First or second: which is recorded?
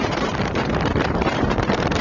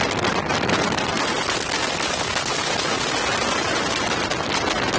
second